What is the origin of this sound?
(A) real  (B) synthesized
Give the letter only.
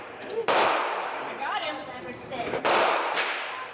B